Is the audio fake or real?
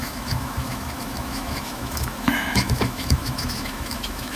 fake